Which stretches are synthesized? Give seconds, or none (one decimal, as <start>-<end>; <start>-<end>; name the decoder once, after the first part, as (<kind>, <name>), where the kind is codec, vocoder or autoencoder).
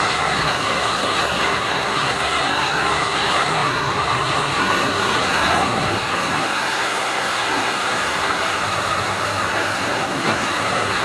0.0-11.0 (codec, SNAC)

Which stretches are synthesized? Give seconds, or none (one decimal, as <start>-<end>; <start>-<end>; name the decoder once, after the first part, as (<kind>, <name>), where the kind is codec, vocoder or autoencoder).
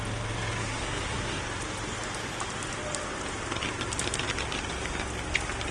0.6-1.4 (codec, SNAC)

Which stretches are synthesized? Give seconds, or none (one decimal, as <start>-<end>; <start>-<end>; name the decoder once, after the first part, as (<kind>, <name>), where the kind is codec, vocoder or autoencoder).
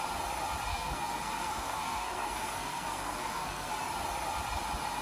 0.7-3.7 (codec, SNAC)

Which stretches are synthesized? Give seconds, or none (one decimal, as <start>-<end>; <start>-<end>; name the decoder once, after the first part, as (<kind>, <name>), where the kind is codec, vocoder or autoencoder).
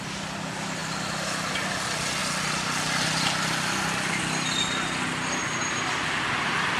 none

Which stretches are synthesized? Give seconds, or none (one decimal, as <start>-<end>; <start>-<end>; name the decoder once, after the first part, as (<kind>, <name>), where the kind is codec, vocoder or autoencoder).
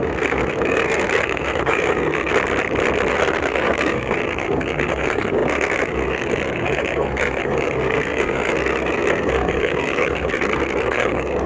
0.0-2.3 (codec, SNAC); 3.1-11.5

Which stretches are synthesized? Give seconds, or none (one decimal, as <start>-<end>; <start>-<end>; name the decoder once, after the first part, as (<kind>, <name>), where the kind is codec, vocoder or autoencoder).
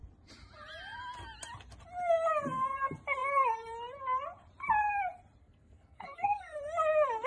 5.4-6.6 (codec, SNAC)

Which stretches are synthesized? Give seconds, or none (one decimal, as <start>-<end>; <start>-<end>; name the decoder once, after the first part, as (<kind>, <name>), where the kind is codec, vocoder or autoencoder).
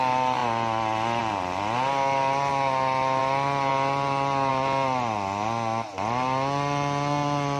none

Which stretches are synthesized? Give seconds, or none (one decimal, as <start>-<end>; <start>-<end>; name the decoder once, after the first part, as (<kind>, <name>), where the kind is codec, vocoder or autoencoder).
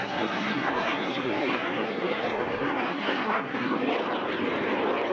0.0-3.9 (codec, SNAC)